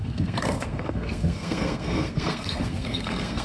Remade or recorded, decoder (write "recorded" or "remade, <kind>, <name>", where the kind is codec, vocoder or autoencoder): remade, codec, SNAC